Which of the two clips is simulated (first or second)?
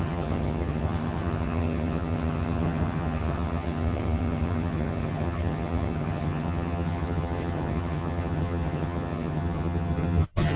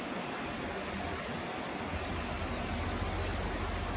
first